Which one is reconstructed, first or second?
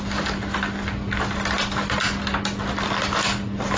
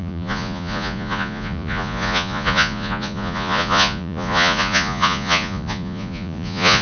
second